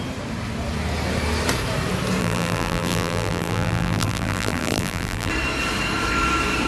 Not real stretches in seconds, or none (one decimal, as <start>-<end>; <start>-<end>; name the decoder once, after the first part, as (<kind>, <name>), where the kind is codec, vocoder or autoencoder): 2.2-5.3 (vocoder, BigVGAN v2)